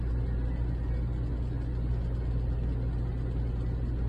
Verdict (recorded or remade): recorded